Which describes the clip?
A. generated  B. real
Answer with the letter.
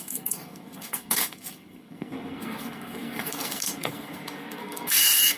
A